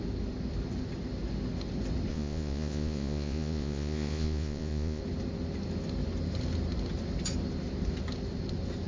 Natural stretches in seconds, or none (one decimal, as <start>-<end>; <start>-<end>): 0.0-2.1; 5.0-8.9